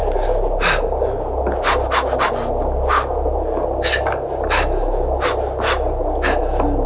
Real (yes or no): yes